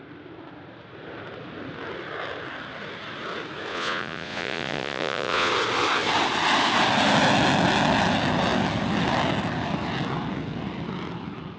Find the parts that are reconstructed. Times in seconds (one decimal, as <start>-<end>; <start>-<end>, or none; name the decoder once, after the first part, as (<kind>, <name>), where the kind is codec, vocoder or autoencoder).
3.7-5.5 (vocoder, Vocos)